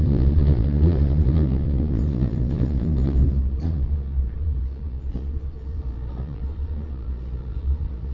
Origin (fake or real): fake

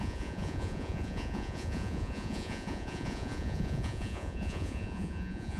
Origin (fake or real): fake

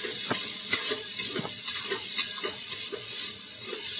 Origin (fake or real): fake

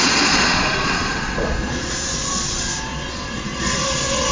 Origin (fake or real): fake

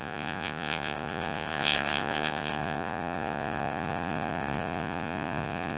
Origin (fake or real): fake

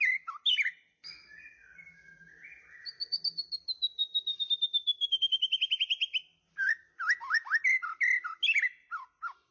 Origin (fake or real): real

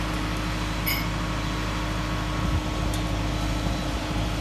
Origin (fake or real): real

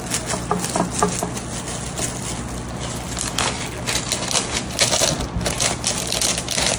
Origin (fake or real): real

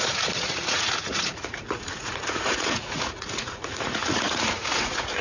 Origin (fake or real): fake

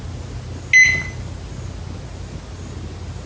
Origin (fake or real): real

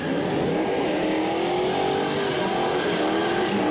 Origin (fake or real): real